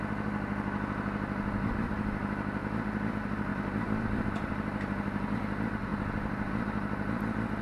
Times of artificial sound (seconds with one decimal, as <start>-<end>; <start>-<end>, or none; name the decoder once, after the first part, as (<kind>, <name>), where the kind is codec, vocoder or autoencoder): 3.5-5.4 (vocoder, BigVGAN v2)